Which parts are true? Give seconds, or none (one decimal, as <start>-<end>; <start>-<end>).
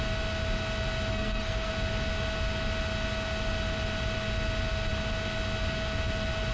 0.0-1.1; 1.7-6.5